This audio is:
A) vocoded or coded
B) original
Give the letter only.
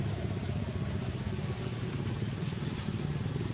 B